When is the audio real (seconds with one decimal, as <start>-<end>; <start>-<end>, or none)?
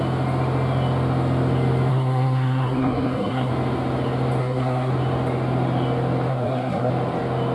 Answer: 0.0-1.9; 3.5-4.4; 4.9-6.3; 6.9-7.5